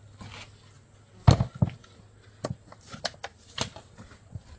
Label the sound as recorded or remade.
recorded